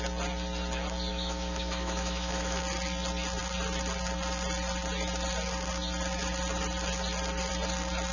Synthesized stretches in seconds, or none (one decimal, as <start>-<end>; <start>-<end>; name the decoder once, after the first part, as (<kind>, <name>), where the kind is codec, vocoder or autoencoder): 1.1-2.6 (autoencoder, DAC-VAE)